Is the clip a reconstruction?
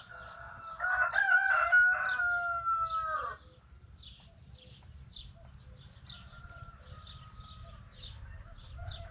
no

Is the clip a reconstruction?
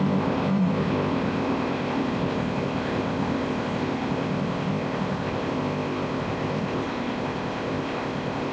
yes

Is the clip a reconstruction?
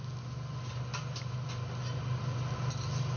no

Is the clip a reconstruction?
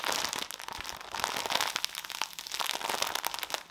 no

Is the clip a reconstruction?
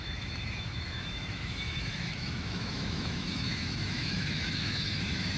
yes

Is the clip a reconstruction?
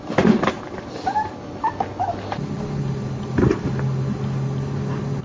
no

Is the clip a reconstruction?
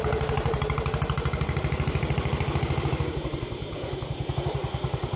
yes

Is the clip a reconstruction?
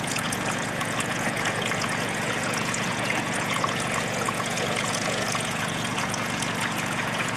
yes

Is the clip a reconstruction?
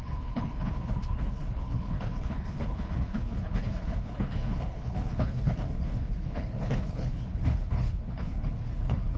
yes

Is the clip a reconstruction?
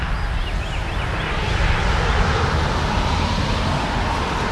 no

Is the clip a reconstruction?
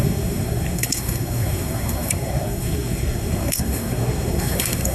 yes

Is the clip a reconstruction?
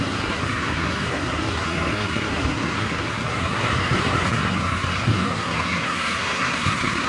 yes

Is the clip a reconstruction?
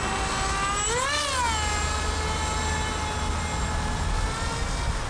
no